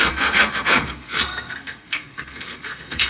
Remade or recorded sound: remade